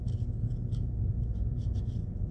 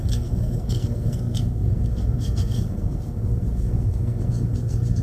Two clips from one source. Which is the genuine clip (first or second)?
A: first